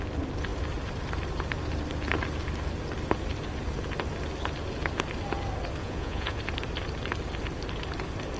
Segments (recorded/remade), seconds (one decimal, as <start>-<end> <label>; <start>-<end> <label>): 0.0-5.8 recorded; 5.8-6.4 remade; 6.4-8.4 recorded